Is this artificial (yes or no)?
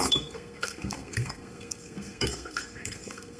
yes